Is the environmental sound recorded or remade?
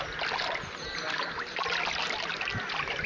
recorded